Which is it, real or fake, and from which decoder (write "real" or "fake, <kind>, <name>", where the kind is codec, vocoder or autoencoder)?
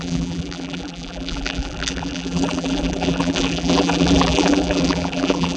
fake, vocoder, BigVGAN v2